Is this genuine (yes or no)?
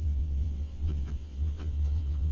no